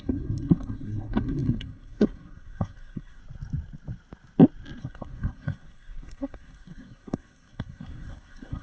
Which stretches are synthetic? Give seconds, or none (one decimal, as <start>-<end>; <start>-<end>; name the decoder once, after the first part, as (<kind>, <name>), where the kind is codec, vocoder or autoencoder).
0.0-3.2 (codec, SNAC); 4.8-8.6